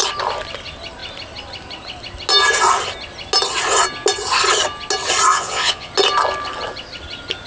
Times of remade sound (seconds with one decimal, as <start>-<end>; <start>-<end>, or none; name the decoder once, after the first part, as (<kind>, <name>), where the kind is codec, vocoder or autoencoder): 5.3-5.9 (vocoder, Vocos)